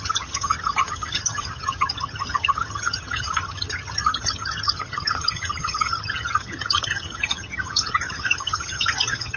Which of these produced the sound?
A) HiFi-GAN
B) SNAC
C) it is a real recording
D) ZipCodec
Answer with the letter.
A